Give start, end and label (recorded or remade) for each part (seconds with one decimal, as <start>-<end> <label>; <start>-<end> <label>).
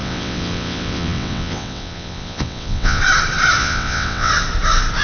0.0-3.0 remade; 3.0-3.6 recorded; 3.6-4.3 remade; 4.3-5.0 recorded